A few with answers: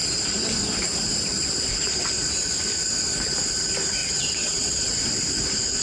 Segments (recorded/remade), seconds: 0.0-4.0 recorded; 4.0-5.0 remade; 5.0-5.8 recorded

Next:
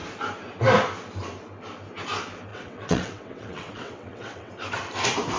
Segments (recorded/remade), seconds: 0.0-2.5 recorded; 2.5-4.5 remade; 4.5-5.4 recorded

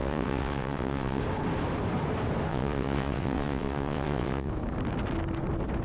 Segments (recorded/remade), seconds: 0.0-1.2 remade; 1.2-2.5 recorded; 2.5-4.5 remade; 4.5-5.8 recorded